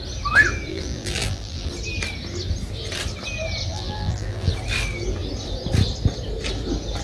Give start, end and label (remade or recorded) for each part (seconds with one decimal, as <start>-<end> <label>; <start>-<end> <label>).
0.0-0.7 recorded; 0.7-1.7 remade; 1.7-3.7 recorded; 3.7-4.5 remade; 4.5-7.0 recorded